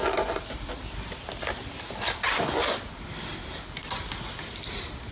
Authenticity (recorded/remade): recorded